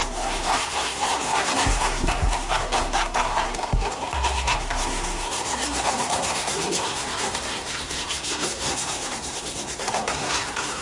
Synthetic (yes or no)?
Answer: yes